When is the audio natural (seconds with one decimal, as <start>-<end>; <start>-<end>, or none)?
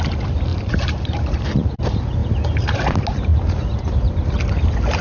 0.0-0.5; 1.7-3.3; 4.2-5.0